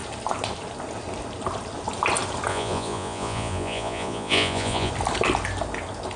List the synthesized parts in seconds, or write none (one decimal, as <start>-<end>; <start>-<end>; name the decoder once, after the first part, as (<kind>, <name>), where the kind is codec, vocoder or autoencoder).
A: 2.5-4.9 (vocoder, Vocos)